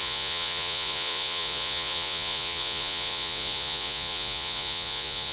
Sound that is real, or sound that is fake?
fake